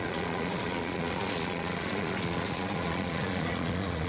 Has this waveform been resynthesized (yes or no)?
yes